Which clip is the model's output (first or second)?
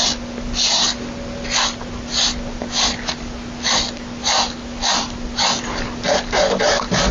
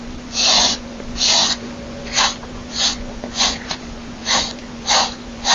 second